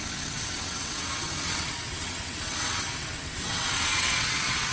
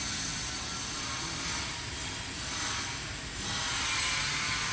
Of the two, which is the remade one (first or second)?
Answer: first